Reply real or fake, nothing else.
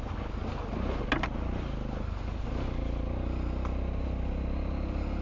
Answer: real